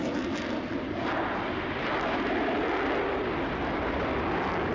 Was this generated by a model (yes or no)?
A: no